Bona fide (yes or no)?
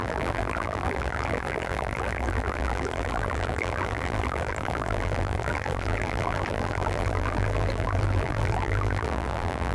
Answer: no